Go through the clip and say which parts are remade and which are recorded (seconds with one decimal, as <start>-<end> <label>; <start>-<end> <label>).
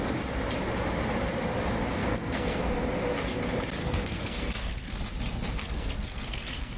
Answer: 0.0-2.0 recorded; 2.0-2.6 remade; 2.6-3.8 recorded; 3.8-5.0 remade; 5.0-5.6 recorded; 5.6-6.8 remade